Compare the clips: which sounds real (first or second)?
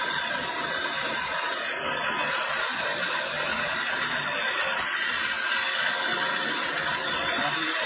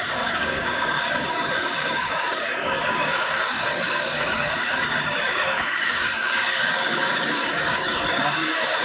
first